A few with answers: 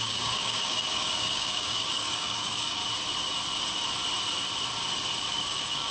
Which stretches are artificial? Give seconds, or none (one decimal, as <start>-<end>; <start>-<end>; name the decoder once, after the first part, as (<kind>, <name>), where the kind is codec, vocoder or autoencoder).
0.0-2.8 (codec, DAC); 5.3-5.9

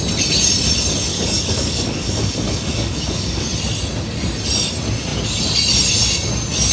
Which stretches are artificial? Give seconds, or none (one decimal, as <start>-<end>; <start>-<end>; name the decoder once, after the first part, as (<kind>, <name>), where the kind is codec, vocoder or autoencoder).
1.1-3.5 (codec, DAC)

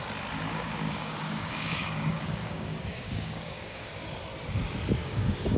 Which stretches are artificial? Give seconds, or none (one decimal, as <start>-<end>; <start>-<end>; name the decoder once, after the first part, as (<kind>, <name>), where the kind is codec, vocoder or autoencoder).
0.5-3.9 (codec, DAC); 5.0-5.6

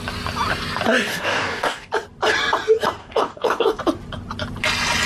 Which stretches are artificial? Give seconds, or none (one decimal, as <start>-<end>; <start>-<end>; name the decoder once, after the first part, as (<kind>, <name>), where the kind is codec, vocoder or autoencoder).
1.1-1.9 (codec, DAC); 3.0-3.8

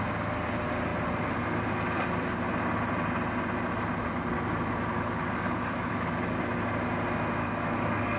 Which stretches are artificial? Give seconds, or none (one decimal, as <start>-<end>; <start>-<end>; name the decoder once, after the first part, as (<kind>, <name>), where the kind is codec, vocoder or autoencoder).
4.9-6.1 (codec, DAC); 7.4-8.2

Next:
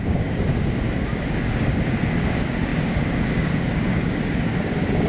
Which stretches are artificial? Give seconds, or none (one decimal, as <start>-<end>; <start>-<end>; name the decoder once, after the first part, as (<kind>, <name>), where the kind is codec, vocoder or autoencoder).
0.0-5.1 (codec, DAC)

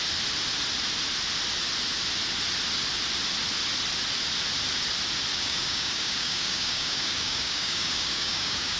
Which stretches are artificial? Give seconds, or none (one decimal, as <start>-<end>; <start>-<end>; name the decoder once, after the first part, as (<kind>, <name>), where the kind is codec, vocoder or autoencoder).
5.3-8.8 (codec, DAC)

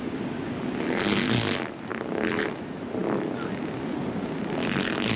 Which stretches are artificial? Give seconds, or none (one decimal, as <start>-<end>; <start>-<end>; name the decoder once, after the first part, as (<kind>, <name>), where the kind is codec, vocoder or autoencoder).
none